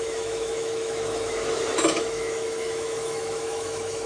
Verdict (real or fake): fake